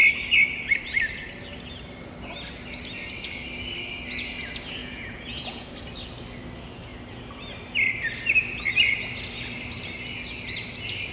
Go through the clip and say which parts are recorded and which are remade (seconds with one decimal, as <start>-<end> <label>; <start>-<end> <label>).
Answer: 0.0-4.8 recorded; 4.8-5.7 remade; 5.7-11.1 recorded